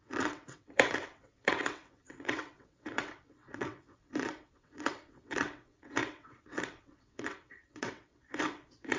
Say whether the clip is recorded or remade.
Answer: remade